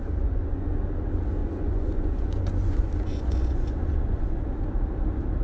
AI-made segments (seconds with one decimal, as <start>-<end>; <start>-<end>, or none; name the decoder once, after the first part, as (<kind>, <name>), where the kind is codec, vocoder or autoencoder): 0.0-0.7 (vocoder, Vocos); 1.4-4.4